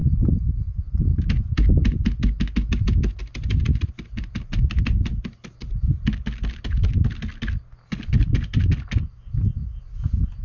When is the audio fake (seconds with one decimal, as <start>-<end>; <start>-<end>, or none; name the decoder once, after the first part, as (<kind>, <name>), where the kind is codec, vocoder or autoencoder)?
none